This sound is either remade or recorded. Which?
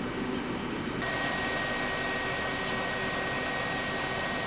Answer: recorded